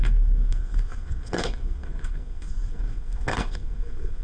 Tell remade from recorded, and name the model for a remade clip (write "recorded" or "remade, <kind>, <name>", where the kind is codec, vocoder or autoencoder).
remade, codec, SNAC